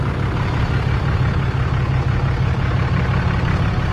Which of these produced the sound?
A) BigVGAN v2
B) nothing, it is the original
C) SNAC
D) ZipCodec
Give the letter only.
B